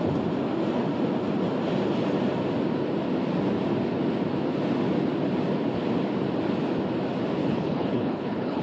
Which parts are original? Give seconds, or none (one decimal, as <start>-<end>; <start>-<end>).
0.0-7.4